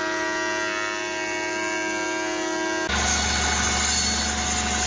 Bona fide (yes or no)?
yes